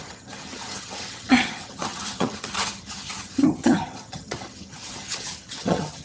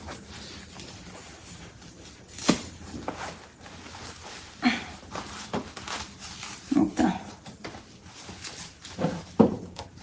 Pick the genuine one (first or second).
second